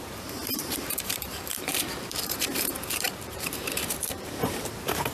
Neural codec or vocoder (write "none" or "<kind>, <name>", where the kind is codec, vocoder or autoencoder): vocoder, BigVGAN v2